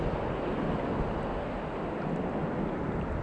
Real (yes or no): yes